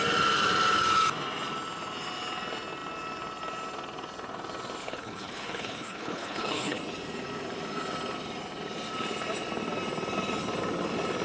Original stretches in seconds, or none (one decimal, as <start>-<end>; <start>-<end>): 0.0-4.8; 6.8-11.2